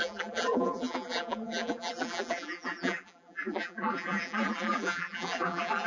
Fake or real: fake